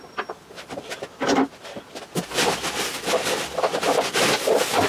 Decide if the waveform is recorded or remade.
recorded